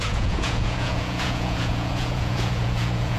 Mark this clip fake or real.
fake